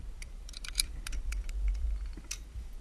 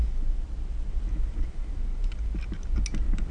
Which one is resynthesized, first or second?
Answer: first